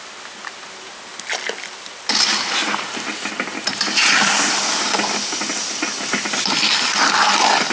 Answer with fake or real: real